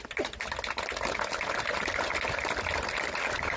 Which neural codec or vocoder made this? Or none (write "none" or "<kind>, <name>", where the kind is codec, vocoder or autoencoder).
none